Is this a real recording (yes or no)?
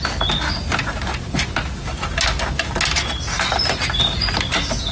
yes